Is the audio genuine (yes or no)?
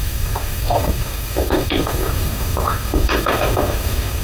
no